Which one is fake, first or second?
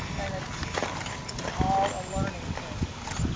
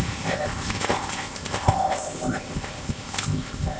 second